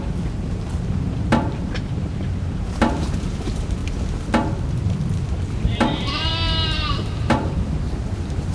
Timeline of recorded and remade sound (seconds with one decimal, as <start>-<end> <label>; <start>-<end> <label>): 0.0-3.8 remade; 3.8-5.6 recorded; 5.6-6.3 remade; 6.3-6.9 recorded; 6.9-8.5 remade